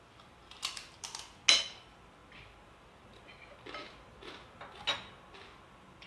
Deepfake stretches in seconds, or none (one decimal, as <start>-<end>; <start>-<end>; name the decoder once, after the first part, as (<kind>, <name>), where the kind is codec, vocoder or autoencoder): 3.8-4.5 (vocoder, BigVGAN v2)